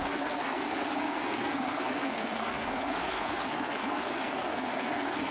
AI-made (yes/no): yes